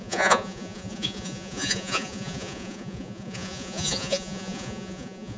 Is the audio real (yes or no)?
no